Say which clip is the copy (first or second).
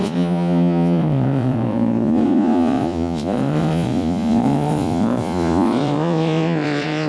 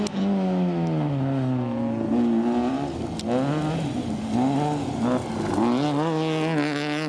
first